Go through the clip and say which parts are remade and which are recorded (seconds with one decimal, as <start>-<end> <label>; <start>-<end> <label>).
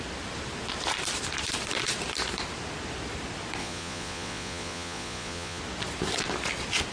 0.0-3.6 recorded; 3.6-5.6 remade; 5.6-6.9 recorded